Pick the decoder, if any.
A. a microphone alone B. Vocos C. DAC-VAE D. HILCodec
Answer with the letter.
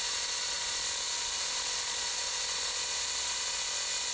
B